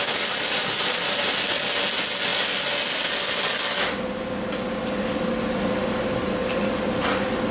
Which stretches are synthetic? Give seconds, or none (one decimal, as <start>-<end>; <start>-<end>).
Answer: none